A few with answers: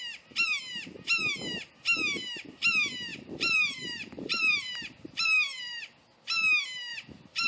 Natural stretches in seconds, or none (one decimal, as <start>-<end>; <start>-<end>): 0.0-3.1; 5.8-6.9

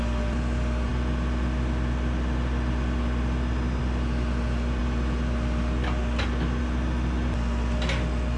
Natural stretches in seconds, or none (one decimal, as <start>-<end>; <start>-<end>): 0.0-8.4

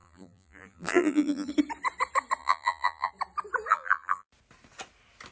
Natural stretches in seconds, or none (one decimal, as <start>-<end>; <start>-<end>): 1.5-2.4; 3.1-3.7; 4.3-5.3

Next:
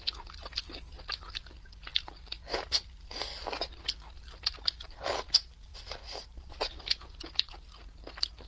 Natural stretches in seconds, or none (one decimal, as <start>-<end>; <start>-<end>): 0.0-5.7; 7.1-8.5